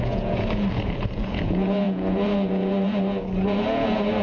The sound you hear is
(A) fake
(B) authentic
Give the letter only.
A